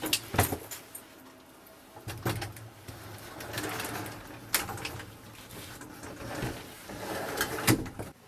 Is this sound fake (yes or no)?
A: no